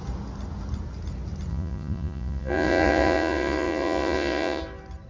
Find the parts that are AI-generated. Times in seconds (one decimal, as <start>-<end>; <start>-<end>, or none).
1.5-4.6